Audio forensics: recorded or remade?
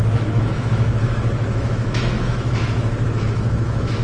remade